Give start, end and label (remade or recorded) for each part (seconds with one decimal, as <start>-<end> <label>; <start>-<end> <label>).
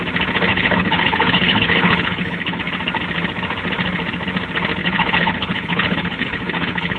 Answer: 0.0-0.5 recorded; 0.5-2.6 remade; 2.6-4.8 recorded; 4.8-7.0 remade